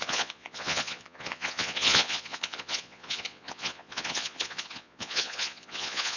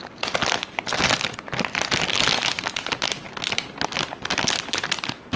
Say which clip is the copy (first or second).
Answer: first